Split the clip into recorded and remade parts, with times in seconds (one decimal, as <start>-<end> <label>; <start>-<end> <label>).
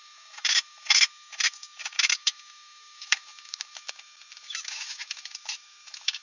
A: 0.0-6.2 remade